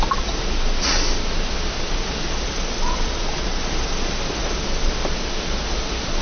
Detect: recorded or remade recorded